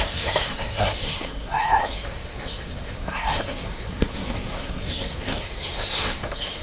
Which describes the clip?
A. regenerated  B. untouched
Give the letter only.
A